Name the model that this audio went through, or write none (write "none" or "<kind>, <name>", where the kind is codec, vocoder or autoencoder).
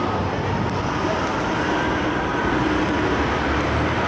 vocoder, BigVGAN v2